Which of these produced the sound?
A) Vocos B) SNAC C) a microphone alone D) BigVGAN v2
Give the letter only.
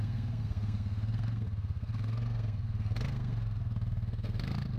B